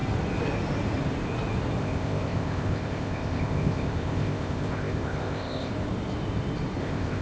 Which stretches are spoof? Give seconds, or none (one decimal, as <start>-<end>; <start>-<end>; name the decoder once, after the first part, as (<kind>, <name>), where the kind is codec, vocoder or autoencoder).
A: 1.8-5.7 (codec, ZipCodec); 6.8-7.2